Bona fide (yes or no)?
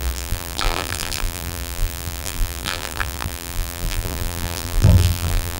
no